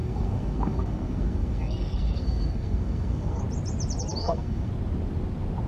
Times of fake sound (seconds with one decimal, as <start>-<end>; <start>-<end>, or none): 0.0-3.4; 4.2-4.7